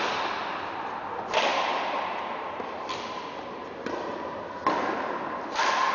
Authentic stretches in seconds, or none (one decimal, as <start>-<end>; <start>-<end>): 0.0-1.5; 2.9-5.9